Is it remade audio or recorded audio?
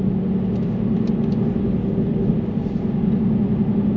recorded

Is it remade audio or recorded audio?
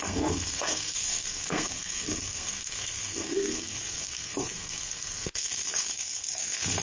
remade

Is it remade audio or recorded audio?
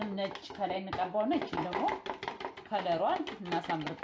recorded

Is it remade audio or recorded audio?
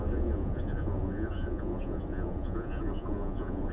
remade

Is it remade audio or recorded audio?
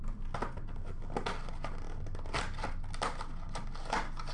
recorded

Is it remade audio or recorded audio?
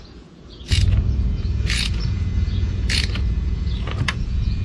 remade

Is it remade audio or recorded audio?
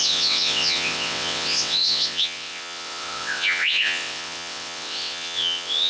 remade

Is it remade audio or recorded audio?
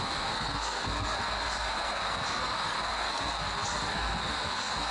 remade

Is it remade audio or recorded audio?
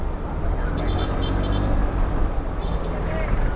recorded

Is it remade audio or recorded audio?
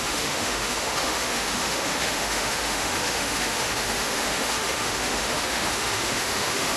remade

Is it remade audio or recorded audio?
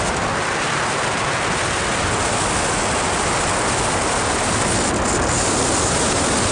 recorded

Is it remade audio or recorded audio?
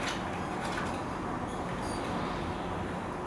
recorded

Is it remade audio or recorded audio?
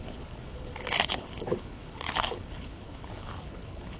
remade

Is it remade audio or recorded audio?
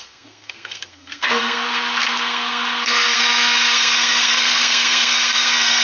remade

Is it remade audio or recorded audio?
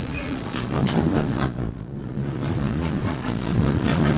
remade